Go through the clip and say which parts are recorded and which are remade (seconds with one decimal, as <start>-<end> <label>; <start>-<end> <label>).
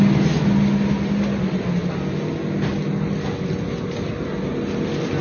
0.0-5.2 recorded